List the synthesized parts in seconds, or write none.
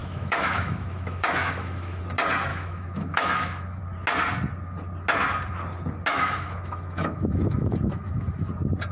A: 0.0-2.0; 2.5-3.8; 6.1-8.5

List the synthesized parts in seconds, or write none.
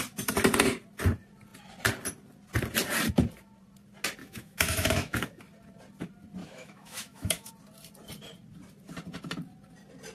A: 4.2-5.4; 6.4-7.5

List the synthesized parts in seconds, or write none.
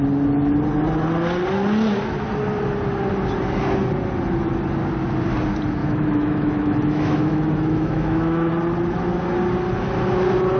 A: 5.8-8.5